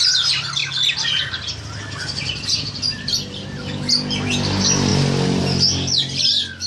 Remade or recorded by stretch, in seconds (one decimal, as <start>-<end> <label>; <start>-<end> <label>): 0.0-6.7 recorded